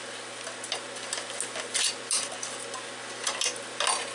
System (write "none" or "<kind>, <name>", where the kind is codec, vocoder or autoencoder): none